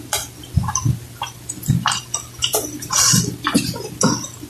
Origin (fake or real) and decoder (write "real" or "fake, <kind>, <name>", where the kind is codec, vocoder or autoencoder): fake, vocoder, BigVGAN v2